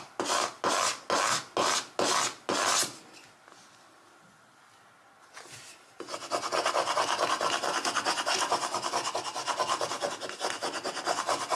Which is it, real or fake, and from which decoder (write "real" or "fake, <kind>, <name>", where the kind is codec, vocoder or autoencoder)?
real